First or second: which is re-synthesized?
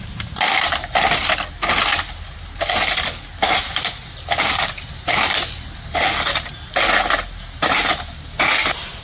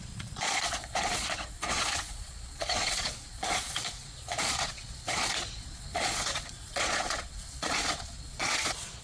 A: second